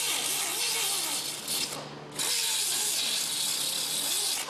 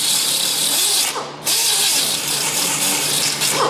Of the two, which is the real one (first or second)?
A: first